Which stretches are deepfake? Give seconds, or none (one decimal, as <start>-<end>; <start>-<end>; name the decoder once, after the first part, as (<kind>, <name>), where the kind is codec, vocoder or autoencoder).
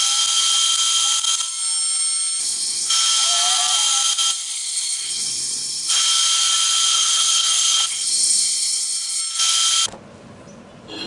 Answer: 2.4-2.9 (codec, HILCodec); 4.4-6.0; 6.9-9.2